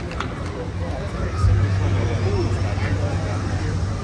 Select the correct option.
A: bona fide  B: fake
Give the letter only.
A